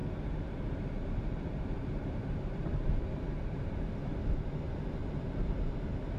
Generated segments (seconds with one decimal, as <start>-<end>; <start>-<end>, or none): 0.0-3.7; 5.0-5.8